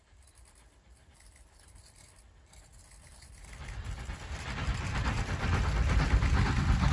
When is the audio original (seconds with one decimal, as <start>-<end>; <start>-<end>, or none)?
0.0-6.9